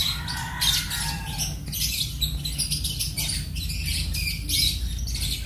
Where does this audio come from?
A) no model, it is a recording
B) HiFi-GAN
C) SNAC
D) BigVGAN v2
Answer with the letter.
A